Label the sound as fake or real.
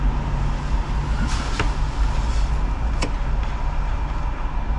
real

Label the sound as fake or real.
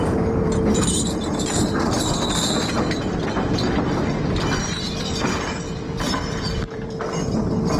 fake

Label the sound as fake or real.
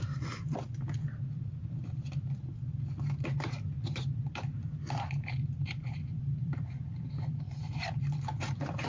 fake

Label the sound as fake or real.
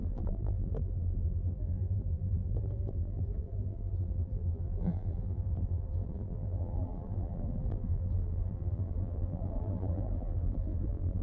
fake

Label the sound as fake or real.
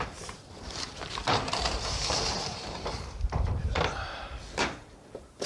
fake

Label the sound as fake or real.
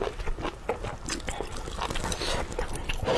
real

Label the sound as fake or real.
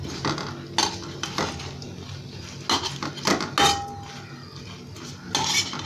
real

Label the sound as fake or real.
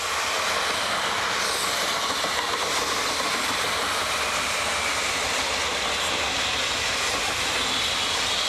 real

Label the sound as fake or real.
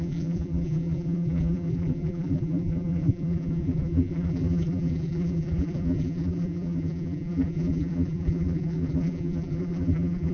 fake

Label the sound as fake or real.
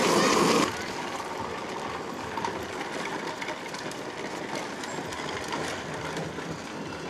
real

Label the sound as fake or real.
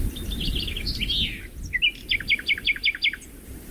real